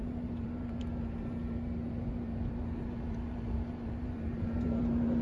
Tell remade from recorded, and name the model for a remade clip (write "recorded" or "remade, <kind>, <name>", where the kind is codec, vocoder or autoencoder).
remade, vocoder, BigVGAN v2